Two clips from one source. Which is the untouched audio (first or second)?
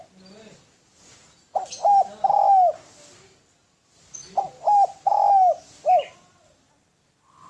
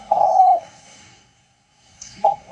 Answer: first